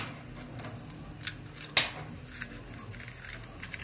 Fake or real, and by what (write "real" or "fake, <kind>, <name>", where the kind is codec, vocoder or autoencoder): real